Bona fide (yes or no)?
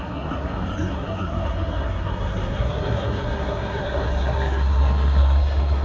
no